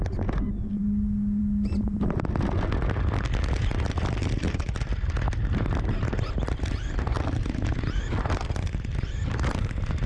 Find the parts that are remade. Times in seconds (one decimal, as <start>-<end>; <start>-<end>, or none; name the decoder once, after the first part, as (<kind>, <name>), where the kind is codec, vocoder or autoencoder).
none